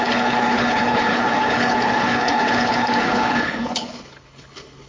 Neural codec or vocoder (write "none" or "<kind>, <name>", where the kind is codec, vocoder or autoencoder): codec, HILCodec